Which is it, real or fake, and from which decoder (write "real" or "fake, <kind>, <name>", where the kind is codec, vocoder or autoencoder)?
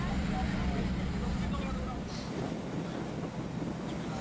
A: real